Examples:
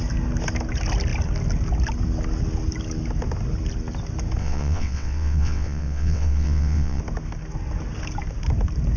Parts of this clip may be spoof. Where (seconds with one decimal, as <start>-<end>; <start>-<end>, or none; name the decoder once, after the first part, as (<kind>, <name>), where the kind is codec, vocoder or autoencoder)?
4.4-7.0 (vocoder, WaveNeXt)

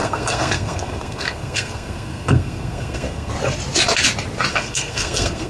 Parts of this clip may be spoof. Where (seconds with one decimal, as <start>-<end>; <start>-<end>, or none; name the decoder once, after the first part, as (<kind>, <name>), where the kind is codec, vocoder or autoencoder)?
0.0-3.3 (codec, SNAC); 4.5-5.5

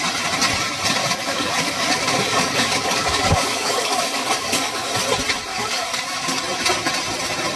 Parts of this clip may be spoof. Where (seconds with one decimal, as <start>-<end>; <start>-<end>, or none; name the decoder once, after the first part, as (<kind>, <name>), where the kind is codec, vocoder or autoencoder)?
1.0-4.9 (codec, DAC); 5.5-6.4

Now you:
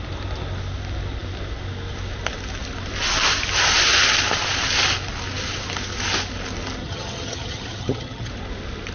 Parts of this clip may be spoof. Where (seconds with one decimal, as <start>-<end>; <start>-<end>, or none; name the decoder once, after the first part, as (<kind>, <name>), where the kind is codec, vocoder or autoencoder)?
6.8-8.3 (vocoder, HiFi-GAN)